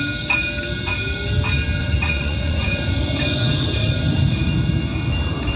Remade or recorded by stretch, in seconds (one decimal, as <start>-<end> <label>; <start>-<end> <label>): 0.0-1.8 recorded; 1.8-2.8 remade; 2.8-5.6 recorded